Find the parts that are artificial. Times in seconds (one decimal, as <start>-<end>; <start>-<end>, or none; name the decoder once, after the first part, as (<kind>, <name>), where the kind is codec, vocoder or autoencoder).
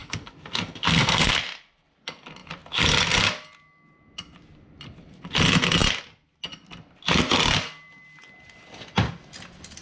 0.0-1.3 (codec, SNAC)